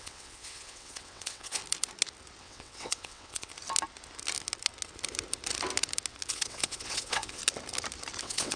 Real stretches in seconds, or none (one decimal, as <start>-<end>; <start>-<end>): 1.6-2.4; 3.5-6.3; 7.4-8.2